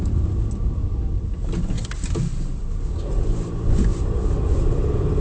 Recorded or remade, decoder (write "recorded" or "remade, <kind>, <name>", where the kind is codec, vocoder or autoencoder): recorded